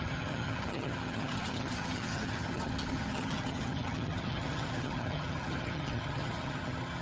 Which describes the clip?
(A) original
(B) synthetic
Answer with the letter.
B